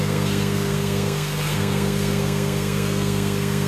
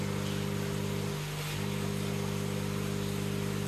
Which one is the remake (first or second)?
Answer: first